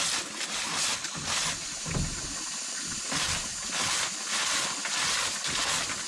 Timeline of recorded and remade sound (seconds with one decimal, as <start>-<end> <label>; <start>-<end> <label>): 0.0-6.1 recorded